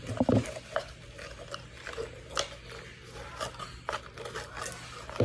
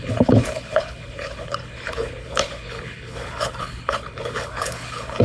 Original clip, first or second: first